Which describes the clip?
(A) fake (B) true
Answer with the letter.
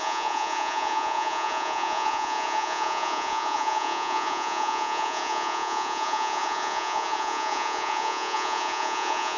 A